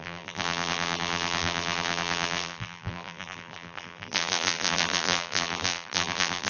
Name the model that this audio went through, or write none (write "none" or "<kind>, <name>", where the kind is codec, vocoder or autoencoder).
vocoder, BigVGAN v2